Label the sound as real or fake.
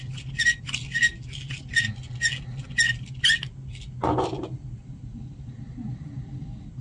real